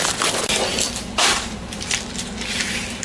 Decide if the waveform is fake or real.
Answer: real